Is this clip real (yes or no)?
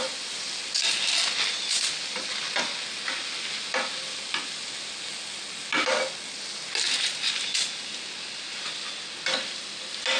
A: yes